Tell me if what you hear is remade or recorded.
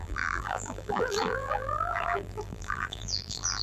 remade